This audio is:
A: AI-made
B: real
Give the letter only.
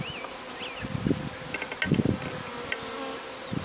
B